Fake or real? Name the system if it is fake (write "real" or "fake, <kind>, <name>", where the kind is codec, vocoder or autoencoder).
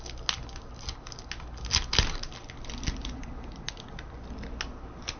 real